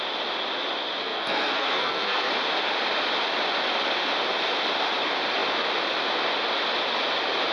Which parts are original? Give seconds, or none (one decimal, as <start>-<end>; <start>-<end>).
0.0-1.0; 2.3-7.5